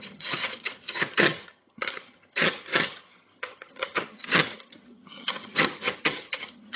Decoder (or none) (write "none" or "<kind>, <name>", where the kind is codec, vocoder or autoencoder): vocoder, HiFi-GAN